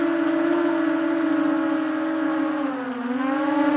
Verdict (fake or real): real